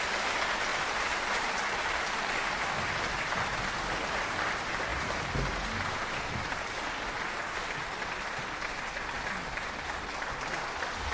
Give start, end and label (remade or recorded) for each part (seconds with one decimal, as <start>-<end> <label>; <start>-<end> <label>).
0.0-0.7 recorded; 0.7-2.7 remade; 2.7-11.1 recorded